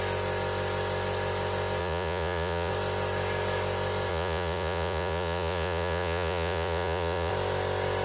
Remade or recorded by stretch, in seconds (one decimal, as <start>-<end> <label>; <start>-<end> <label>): 0.0-1.8 recorded; 1.8-2.7 remade; 2.7-4.1 recorded; 4.1-7.3 remade; 7.3-8.0 recorded